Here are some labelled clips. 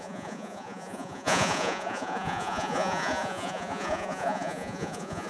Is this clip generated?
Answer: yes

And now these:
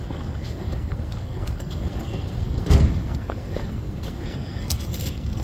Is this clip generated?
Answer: yes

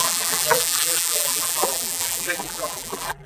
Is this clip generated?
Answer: yes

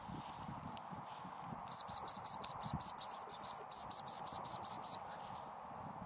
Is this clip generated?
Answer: no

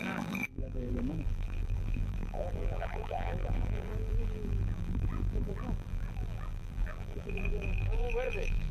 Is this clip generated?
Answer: yes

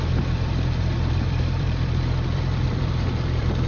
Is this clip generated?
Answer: yes